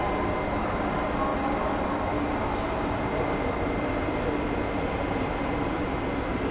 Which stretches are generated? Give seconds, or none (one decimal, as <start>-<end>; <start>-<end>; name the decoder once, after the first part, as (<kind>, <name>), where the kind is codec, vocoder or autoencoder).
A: none